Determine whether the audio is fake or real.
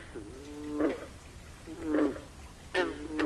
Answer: real